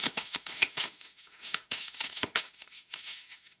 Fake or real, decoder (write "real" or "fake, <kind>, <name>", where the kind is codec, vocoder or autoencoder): fake, autoencoder, DAC-VAE